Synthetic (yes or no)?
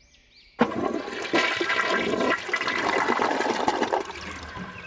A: no